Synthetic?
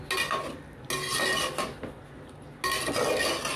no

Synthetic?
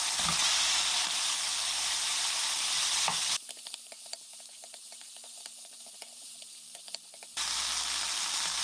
no